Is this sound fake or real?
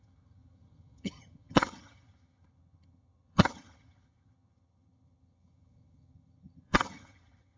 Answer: fake